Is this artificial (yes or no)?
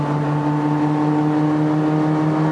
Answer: no